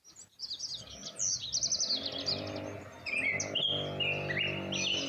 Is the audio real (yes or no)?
yes